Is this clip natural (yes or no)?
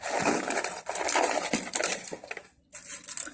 yes